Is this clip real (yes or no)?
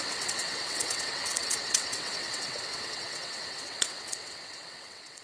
no